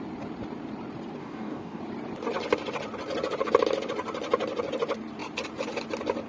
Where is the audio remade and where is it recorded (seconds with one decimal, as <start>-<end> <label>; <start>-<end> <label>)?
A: 0.0-1.2 recorded; 1.2-1.8 remade; 1.8-6.3 recorded